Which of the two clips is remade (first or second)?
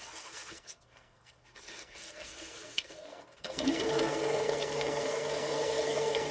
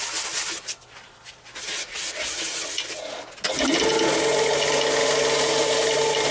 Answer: first